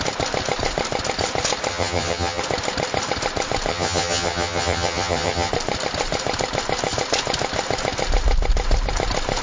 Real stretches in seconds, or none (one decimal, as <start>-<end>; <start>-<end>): 0.0-1.7; 2.4-3.7; 5.5-9.4